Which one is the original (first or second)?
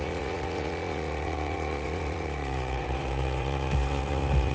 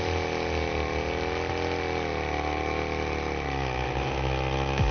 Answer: second